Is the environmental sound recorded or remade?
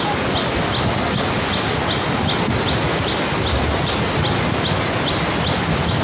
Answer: recorded